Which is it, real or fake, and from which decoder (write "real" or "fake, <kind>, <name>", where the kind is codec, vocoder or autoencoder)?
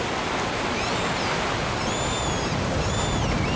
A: real